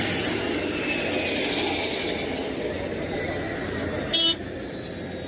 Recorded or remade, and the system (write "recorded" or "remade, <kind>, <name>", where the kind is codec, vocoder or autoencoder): recorded